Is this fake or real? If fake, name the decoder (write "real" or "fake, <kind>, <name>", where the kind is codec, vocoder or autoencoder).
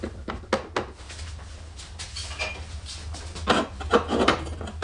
real